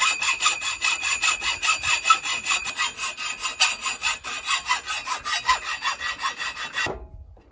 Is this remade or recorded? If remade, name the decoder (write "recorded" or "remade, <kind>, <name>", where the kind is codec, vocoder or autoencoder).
recorded